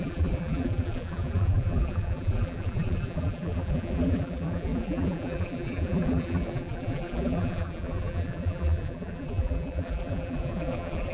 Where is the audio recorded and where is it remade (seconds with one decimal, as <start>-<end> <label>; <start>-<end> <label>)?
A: 0.0-11.1 remade